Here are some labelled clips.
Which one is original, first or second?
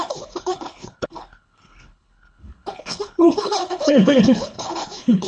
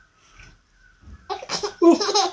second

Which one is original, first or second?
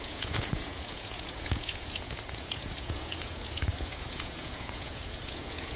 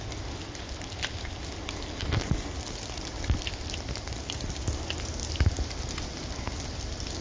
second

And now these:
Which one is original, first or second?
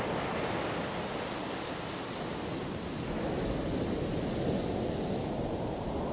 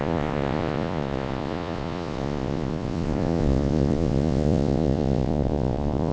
first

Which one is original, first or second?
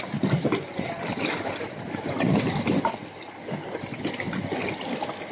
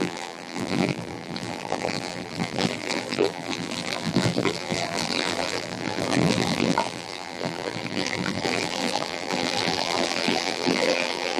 first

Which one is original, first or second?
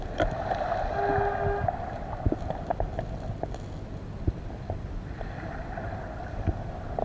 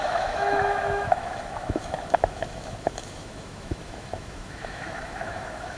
first